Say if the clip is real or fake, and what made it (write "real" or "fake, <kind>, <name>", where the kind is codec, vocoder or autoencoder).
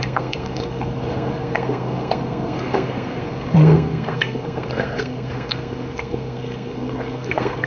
fake, codec, SNAC